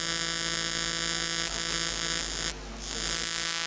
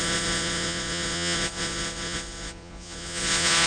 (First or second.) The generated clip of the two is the second